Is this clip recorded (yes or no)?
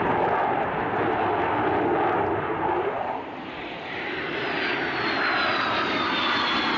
yes